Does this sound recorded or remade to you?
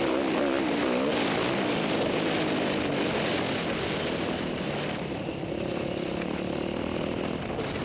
recorded